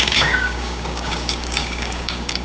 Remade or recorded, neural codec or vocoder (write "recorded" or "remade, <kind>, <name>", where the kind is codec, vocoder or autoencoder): remade, codec, DAC